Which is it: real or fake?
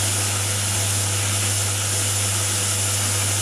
real